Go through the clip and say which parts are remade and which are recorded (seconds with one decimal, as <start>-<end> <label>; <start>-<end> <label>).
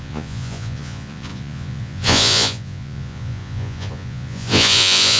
0.0-5.2 remade